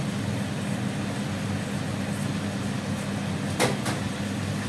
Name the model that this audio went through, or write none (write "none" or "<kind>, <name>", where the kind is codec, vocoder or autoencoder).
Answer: none